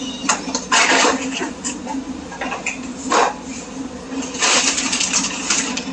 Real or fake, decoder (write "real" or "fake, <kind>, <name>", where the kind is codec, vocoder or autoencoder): fake, vocoder, BigVGAN v2